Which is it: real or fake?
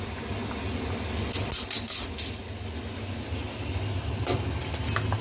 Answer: real